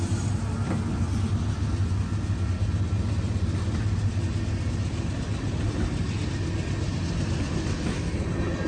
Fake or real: real